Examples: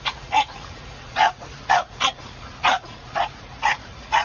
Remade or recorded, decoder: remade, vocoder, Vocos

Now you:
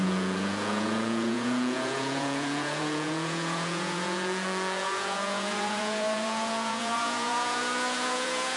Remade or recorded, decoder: remade, vocoder, Vocos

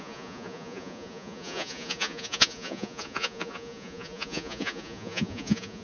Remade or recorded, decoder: remade, vocoder, Vocos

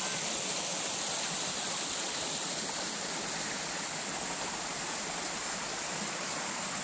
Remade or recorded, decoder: recorded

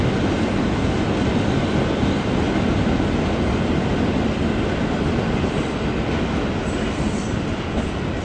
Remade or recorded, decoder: recorded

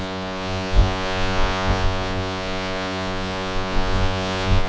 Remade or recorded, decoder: remade, vocoder, Vocos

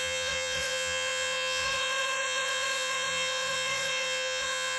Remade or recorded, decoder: remade, vocoder, Vocos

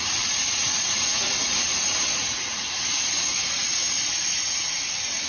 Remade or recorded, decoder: remade, vocoder, Vocos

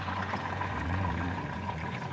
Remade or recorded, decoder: remade, vocoder, Vocos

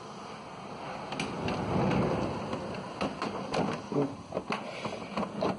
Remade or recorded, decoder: recorded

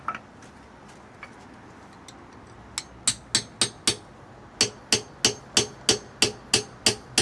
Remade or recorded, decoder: recorded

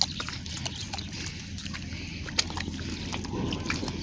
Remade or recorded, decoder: recorded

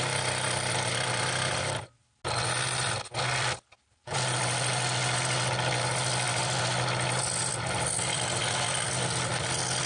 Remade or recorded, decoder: recorded